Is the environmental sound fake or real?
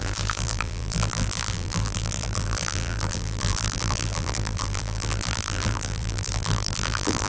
fake